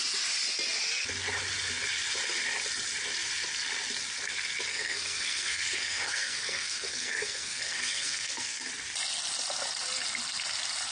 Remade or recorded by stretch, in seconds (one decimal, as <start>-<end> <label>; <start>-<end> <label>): 0.0-4.7 recorded; 4.7-8.7 remade; 8.7-10.9 recorded